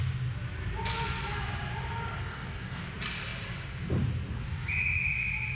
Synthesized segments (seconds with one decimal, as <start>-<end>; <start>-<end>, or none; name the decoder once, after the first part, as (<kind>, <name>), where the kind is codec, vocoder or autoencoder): 2.2-2.8 (codec, DAC)